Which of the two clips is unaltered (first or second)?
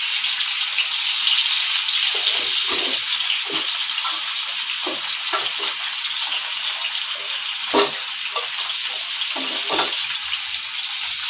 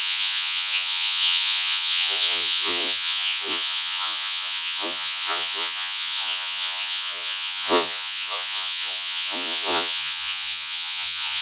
first